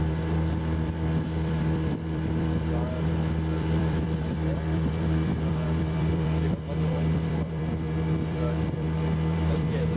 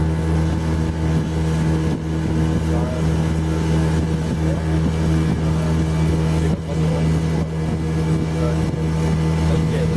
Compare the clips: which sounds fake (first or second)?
first